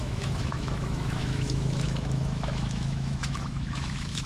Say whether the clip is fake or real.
fake